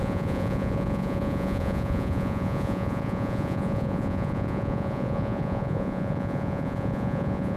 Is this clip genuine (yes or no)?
no